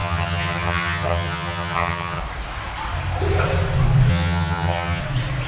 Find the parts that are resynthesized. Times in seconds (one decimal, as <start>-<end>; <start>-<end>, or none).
0.0-2.2; 4.1-5.0